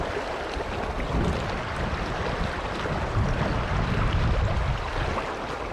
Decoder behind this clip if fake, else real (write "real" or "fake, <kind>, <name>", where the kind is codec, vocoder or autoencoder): real